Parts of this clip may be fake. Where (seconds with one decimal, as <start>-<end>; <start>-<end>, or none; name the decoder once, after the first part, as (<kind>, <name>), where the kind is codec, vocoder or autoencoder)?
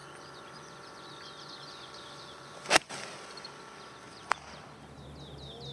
0.0-2.9 (vocoder, Vocos)